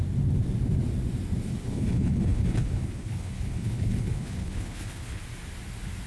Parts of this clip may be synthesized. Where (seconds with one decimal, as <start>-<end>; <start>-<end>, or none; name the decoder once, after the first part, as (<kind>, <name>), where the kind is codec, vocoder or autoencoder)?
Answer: 1.5-5.2 (codec, HILCodec)